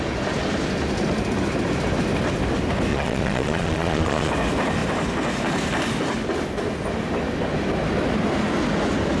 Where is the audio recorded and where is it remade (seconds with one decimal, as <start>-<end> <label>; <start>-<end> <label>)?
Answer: 0.0-2.9 recorded; 2.9-4.3 remade; 4.3-9.2 recorded